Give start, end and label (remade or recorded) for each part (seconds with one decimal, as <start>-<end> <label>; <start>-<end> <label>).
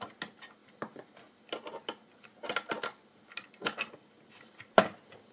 0.0-5.3 recorded